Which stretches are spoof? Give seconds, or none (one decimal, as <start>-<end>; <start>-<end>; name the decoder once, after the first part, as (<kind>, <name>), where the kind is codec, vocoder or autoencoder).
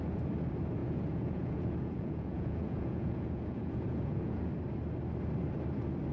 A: 0.8-4.5 (vocoder, Vocos)